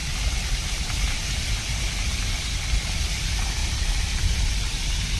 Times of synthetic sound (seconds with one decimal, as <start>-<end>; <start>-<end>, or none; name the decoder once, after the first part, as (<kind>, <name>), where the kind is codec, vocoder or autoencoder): 3.6-4.5 (vocoder, BigVGAN v2)